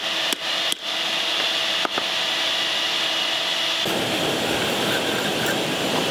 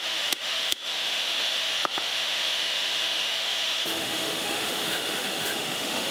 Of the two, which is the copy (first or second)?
second